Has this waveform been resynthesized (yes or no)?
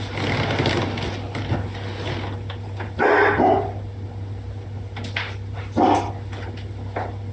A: no